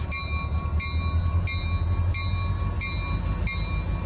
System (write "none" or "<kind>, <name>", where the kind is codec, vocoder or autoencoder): none